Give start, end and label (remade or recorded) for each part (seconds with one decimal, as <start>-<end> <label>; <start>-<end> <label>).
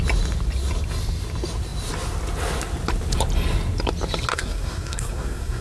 0.0-4.3 recorded; 4.3-5.6 remade